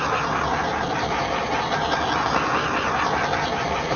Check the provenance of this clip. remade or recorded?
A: recorded